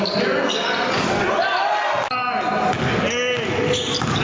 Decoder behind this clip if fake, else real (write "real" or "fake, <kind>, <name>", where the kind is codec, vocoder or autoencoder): real